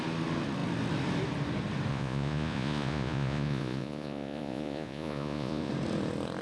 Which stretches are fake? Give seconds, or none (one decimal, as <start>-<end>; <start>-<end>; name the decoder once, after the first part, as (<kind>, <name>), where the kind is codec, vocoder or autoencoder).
1.9-5.7 (vocoder, Vocos)